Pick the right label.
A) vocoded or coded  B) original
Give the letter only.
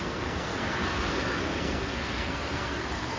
A